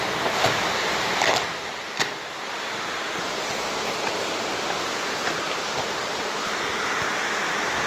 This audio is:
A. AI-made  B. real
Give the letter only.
B